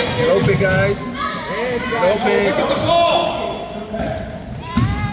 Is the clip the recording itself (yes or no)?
yes